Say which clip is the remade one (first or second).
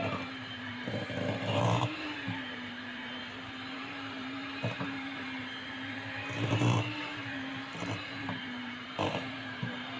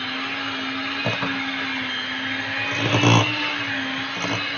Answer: first